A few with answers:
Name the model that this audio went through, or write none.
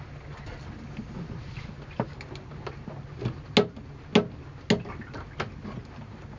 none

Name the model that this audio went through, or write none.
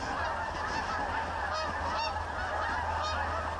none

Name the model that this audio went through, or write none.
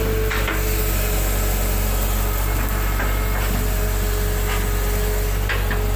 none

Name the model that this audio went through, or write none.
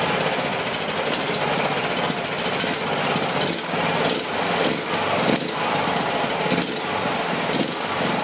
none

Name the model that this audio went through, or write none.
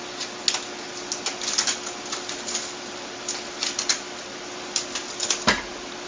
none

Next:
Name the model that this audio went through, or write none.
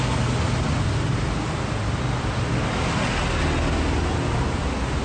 none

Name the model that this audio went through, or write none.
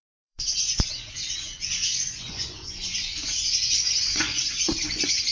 vocoder, Vocos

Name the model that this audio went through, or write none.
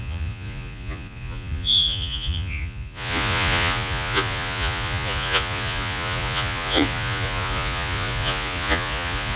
vocoder, Vocos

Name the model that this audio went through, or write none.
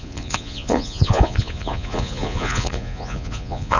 vocoder, Vocos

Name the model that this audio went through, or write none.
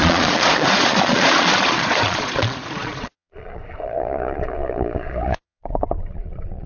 vocoder, Vocos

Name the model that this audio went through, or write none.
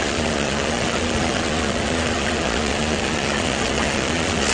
vocoder, Vocos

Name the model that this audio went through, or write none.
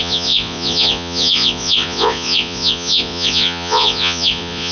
vocoder, Vocos